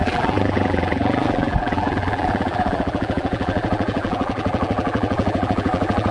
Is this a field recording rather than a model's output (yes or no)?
no